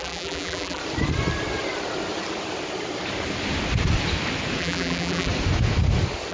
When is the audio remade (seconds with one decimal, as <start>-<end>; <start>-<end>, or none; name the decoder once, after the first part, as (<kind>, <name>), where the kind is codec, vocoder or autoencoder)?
0.0-0.8 (vocoder, BigVGAN v2); 4.6-5.3